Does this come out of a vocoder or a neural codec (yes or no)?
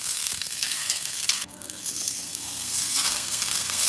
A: yes